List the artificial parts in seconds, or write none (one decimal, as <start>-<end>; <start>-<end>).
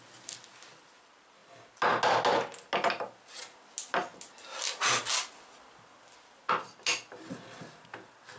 none